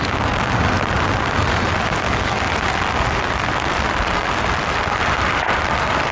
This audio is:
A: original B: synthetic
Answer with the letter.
A